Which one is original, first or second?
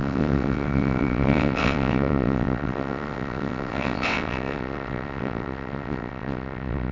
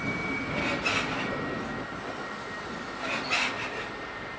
second